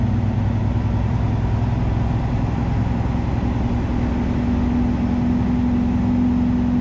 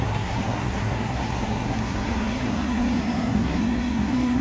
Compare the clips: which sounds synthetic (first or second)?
second